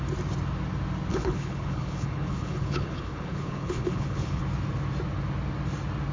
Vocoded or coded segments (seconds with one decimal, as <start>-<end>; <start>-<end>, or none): 1.1-4.4